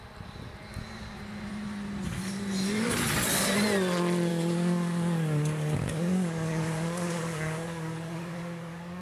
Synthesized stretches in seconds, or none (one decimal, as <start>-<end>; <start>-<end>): 4.3-9.0